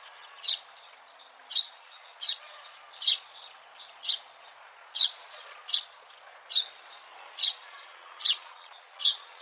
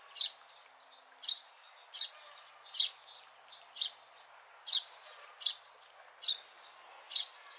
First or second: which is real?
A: second